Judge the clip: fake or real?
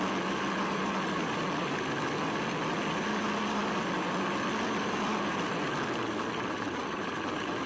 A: fake